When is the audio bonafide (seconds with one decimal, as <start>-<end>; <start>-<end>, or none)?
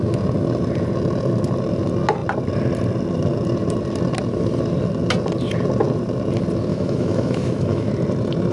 0.0-6.7; 7.9-8.5